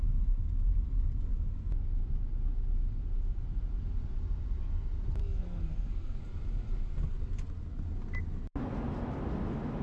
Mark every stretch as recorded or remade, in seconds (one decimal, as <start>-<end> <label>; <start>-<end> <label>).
0.0-5.2 recorded; 5.2-6.2 remade; 6.2-9.8 recorded

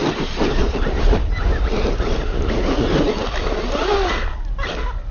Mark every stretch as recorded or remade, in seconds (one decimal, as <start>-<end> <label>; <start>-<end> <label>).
0.0-1.7 remade; 1.7-5.1 recorded

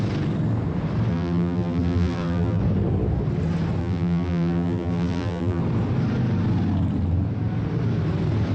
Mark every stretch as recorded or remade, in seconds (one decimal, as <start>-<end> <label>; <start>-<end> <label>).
0.0-1.1 recorded; 1.1-2.6 remade; 2.6-3.8 recorded; 3.8-5.6 remade; 5.6-8.5 recorded